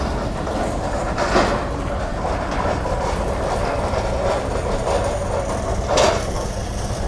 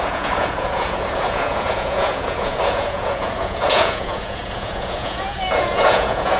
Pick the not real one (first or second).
second